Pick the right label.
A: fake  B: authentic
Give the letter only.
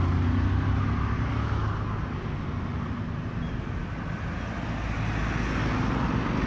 B